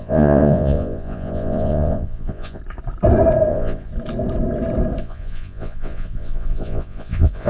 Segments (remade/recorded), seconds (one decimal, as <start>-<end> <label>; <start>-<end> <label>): 0.0-2.6 remade; 2.6-3.5 recorded; 3.5-3.9 remade; 3.9-5.0 recorded; 5.0-7.5 remade